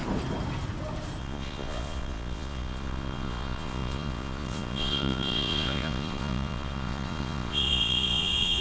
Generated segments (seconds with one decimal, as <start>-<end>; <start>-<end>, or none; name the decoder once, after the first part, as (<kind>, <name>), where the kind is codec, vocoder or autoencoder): 1.2-8.6 (vocoder, Vocos)